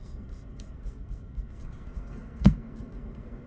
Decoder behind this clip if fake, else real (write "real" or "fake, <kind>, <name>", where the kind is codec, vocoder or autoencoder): fake, codec, SNAC